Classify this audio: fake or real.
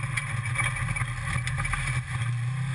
real